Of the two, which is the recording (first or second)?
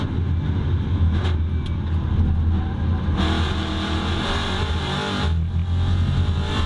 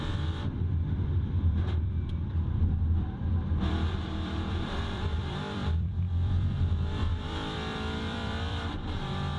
first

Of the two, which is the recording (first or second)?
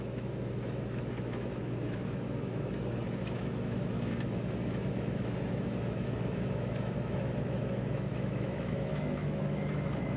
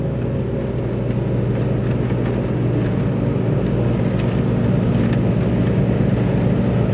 second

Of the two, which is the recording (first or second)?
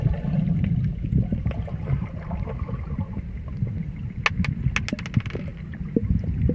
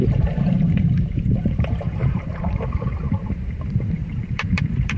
first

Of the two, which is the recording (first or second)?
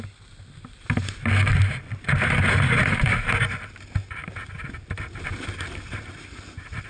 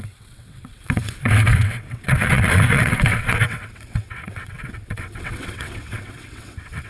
first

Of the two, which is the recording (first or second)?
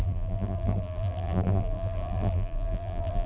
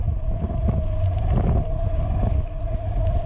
second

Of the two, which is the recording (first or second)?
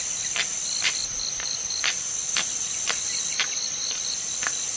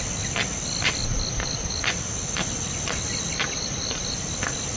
second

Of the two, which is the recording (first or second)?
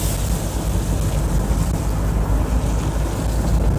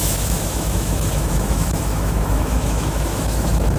first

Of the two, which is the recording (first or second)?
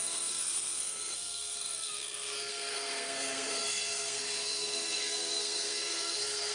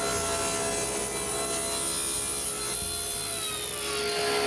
second